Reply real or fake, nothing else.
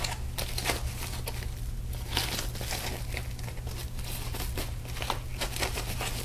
real